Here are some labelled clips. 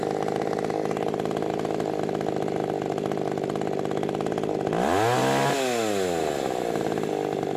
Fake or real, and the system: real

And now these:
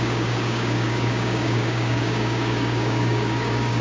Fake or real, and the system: fake, codec, DAC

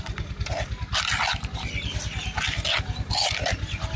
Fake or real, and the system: real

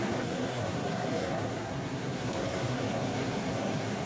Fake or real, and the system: fake, codec, SNAC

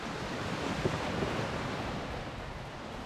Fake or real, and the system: real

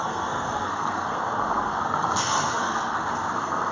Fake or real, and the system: fake, codec, SNAC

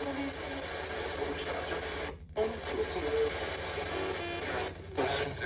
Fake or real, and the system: real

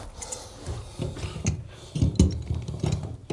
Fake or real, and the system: real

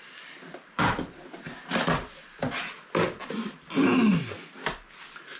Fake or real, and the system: real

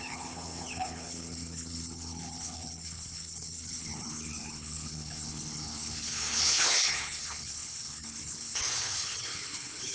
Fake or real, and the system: fake, codec, HILCodec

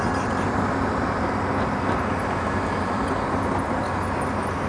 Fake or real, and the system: real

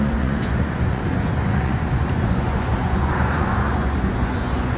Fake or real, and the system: fake, vocoder, Vocos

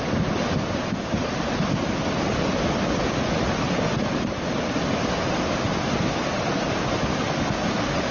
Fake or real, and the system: real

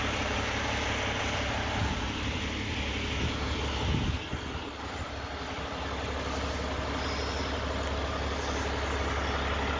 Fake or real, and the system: real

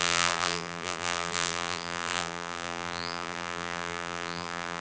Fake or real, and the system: fake, vocoder, BigVGAN v2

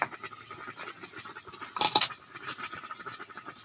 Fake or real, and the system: real